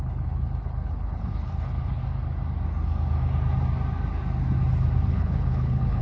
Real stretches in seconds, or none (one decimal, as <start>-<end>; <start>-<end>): 2.0-5.1